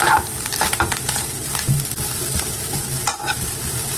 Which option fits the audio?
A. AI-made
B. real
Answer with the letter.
A